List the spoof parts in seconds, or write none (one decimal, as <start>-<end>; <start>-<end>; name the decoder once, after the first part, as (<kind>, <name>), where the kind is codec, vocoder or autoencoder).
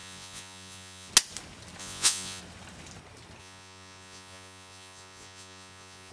0.0-1.1 (vocoder, Vocos); 1.8-2.4; 3.4-6.1